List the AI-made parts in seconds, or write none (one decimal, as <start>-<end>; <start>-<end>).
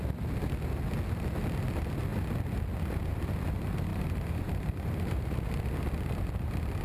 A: 3.9-5.5